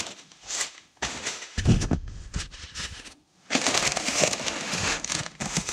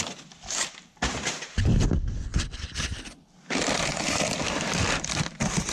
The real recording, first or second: second